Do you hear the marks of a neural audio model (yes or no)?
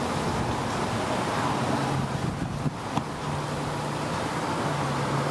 no